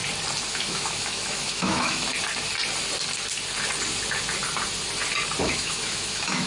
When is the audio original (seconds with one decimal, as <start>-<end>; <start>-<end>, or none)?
0.0-0.5; 2.1-5.4